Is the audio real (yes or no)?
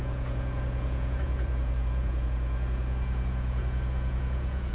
no